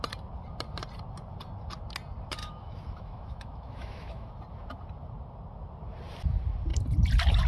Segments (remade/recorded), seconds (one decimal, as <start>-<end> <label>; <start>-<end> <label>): 0.0-2.4 recorded; 2.4-4.3 remade; 4.3-7.5 recorded